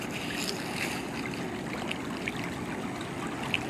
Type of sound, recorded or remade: recorded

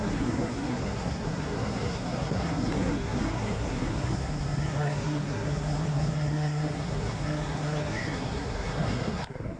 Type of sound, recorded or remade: remade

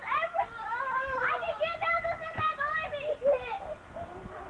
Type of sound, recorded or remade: recorded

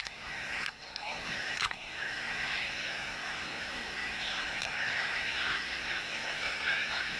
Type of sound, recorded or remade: remade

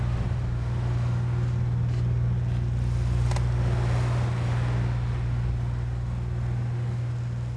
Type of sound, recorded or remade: recorded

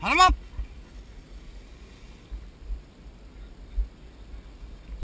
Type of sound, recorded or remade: recorded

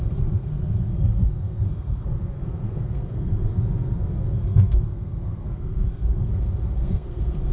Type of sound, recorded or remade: remade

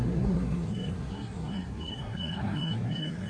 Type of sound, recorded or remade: remade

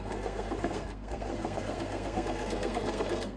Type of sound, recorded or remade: remade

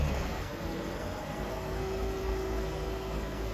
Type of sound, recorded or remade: remade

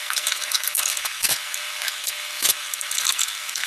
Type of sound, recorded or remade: remade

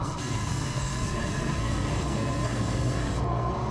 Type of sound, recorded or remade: remade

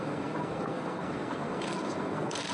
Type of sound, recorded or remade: remade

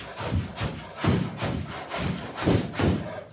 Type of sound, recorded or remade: recorded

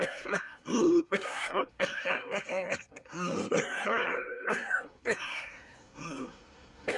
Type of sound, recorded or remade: remade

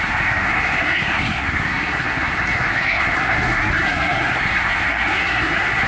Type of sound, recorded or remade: remade